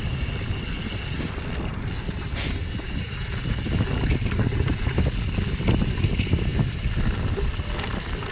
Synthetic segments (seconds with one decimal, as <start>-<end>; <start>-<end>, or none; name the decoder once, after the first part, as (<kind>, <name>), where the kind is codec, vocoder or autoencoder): none